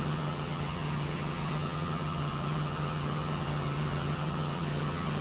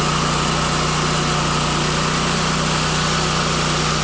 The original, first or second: second